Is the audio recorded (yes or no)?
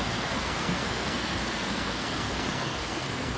no